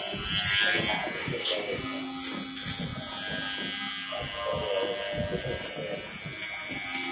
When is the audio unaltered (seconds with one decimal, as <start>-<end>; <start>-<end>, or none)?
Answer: 0.0-1.2; 1.8-7.1

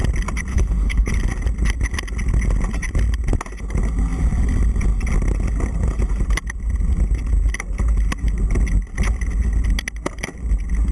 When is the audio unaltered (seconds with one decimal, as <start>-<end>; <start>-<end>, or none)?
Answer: 0.0-0.5; 1.1-10.9